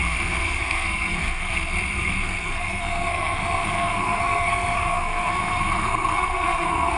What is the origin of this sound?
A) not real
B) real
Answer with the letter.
A